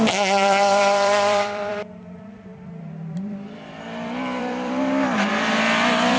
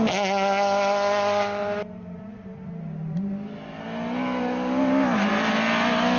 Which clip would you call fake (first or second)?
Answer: first